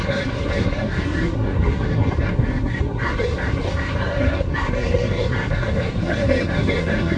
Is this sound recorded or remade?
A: remade